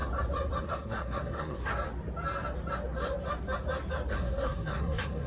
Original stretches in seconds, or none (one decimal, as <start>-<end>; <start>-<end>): 0.0-0.6; 1.7-4.1